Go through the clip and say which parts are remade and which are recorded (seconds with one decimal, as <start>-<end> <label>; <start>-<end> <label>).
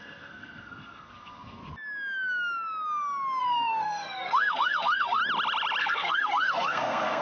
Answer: 0.0-1.6 remade; 1.6-3.4 recorded; 3.4-5.2 remade; 5.2-5.8 recorded; 5.8-7.2 remade